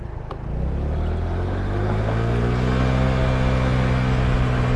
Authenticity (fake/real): real